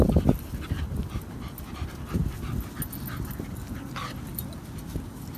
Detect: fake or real real